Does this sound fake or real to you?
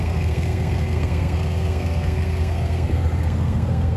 fake